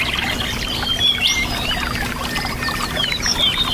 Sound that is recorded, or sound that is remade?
remade